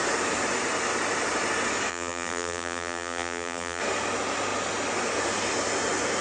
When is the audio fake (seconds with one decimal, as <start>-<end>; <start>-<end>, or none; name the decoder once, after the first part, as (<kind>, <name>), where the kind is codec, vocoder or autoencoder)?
1.9-3.8 (vocoder, BigVGAN v2)